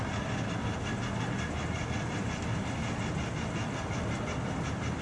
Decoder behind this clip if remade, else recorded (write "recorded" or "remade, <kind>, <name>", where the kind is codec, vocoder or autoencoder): recorded